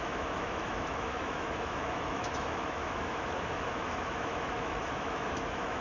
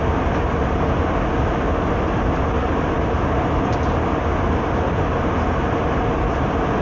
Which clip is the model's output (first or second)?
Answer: first